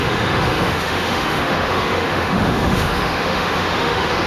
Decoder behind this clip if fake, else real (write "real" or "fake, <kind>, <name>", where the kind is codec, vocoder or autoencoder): fake, autoencoder, DAC-VAE